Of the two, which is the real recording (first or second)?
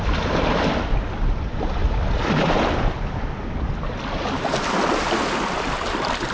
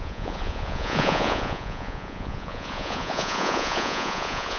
first